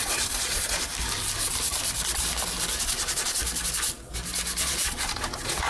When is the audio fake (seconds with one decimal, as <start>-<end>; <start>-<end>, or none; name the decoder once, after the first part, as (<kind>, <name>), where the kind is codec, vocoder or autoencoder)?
0.0-0.9 (vocoder, Vocos); 2.8-3.4; 4.6-5.7